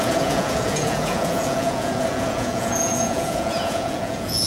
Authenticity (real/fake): fake